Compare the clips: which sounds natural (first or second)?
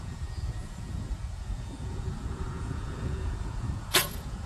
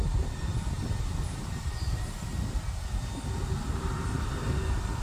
second